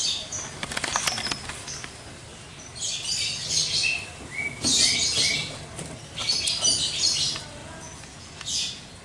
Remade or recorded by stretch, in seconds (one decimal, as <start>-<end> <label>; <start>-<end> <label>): 0.0-7.6 recorded; 7.6-9.0 remade